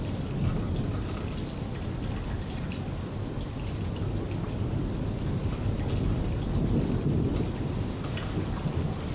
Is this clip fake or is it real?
real